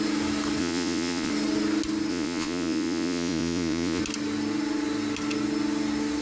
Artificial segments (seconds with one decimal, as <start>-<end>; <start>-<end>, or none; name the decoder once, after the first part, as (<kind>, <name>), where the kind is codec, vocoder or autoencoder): 0.6-1.3 (vocoder, Vocos); 2.1-4.0